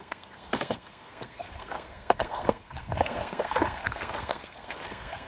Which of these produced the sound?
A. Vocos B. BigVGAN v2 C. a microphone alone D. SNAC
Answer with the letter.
D